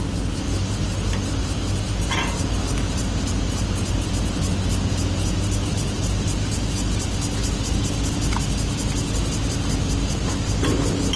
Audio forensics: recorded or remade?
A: recorded